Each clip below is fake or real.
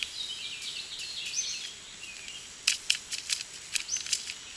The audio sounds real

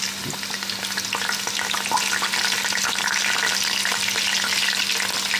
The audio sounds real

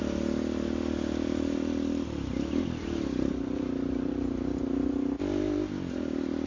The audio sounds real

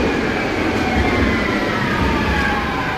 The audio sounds real